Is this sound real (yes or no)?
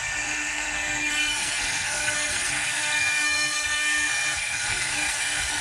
no